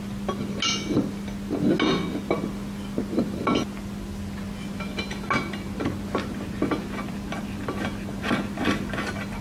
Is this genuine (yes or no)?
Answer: yes